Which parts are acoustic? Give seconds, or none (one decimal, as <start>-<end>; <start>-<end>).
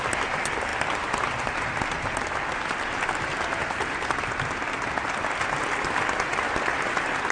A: 0.0-7.3